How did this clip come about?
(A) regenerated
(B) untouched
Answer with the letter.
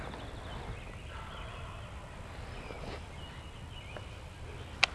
B